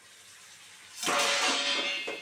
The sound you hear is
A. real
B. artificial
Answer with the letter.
A